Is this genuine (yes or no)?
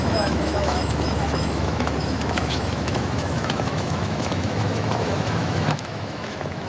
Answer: no